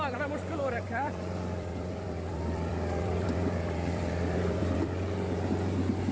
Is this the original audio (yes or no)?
no